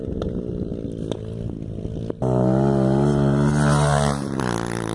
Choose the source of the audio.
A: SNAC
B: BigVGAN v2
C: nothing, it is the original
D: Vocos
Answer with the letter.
C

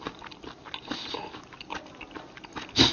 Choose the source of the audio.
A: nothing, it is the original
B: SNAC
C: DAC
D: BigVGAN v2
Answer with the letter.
A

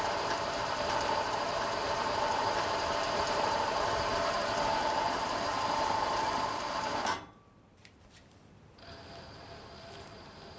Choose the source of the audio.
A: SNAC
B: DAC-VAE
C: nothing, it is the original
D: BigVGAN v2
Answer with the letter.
D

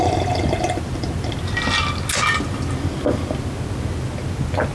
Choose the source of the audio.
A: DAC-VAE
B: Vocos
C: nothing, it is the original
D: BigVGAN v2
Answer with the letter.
C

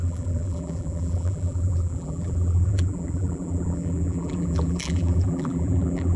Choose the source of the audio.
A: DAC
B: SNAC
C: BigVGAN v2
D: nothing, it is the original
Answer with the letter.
C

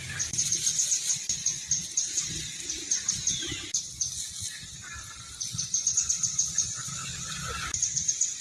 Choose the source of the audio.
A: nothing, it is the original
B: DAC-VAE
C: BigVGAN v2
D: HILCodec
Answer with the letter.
A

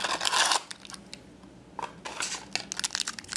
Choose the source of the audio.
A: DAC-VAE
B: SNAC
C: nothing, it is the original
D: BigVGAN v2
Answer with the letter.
C